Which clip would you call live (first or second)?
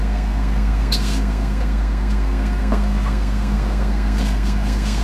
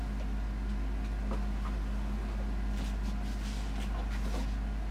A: second